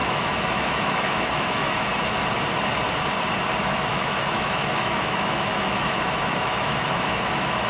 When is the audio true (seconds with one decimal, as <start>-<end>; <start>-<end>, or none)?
1.9-3.6